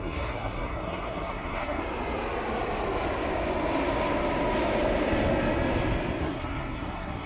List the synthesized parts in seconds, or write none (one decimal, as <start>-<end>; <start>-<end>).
0.0-1.8; 6.2-7.3